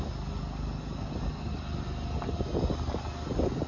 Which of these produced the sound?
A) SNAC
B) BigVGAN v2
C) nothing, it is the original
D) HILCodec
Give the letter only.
C